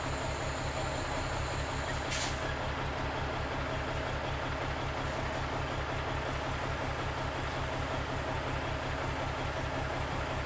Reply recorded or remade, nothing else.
recorded